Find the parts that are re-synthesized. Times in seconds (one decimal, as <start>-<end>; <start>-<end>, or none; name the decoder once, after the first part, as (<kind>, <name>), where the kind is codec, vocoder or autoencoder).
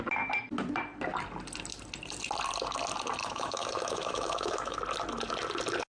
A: 3.2-4.8 (autoencoder, DAC-VAE)